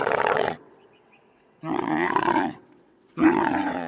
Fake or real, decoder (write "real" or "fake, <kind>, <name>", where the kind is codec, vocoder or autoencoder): fake, vocoder, WaveNeXt